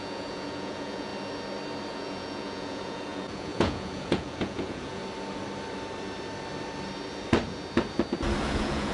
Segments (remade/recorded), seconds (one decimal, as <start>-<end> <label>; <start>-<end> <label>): 0.0-1.1 remade; 1.1-1.9 recorded; 1.9-5.0 remade; 5.0-8.4 recorded; 8.4-8.9 remade